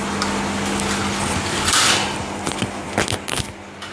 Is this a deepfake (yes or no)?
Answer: no